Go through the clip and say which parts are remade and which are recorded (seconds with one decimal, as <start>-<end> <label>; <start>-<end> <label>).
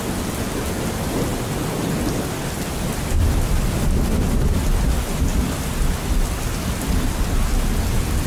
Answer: 0.0-8.3 recorded